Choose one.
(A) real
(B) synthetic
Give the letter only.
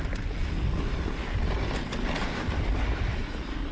A